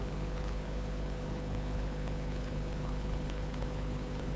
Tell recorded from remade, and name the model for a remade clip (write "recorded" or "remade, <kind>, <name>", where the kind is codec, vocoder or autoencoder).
remade, codec, HILCodec